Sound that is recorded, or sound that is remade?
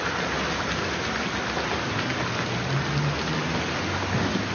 recorded